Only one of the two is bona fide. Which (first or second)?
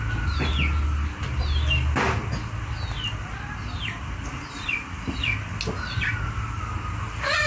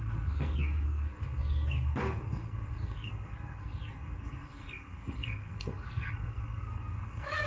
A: first